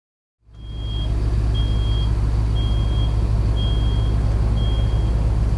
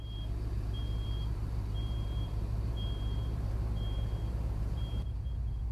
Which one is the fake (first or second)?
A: second